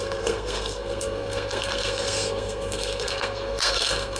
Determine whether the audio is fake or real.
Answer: fake